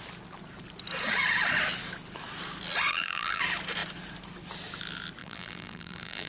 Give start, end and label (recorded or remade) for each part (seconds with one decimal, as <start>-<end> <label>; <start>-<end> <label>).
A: 0.0-2.9 recorded; 2.9-3.4 remade; 3.4-5.2 recorded; 5.2-6.3 remade